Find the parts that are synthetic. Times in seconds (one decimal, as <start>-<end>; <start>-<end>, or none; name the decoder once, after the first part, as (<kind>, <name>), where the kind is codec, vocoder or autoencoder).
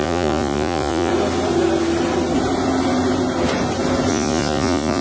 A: 0.0-1.1 (vocoder, Vocos); 4.1-5.0